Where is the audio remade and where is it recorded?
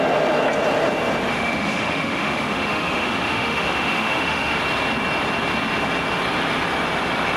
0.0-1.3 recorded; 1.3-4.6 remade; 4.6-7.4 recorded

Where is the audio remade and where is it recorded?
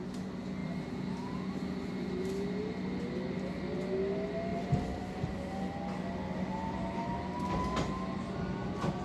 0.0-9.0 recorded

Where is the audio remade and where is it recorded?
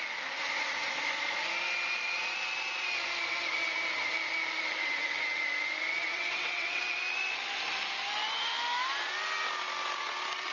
0.0-4.8 recorded; 4.8-5.4 remade; 5.4-6.1 recorded; 6.1-6.8 remade; 6.8-10.5 recorded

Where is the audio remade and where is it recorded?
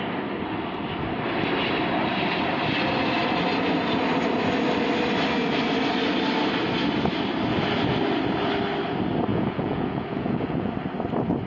0.0-9.3 recorded; 9.3-10.7 remade; 10.7-11.5 recorded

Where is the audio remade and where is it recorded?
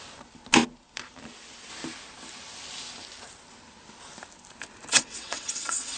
0.0-4.9 recorded; 4.9-6.0 remade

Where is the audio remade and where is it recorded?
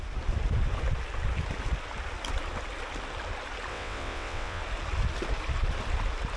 0.0-3.7 recorded; 3.7-4.6 remade; 4.6-6.4 recorded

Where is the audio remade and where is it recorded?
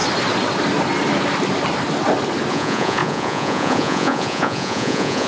0.0-2.5 recorded; 2.5-5.3 remade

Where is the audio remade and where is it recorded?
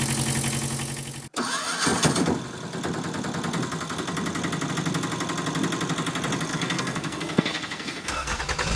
0.0-6.5 recorded; 6.5-8.4 remade; 8.4-8.8 recorded